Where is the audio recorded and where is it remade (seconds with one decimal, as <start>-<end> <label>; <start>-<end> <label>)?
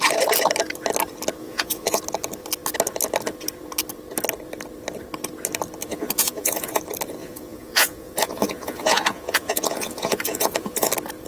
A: 0.0-1.4 recorded; 1.4-2.0 remade; 2.0-5.8 recorded; 5.8-6.8 remade; 6.8-7.2 recorded; 7.2-10.9 remade; 10.9-11.3 recorded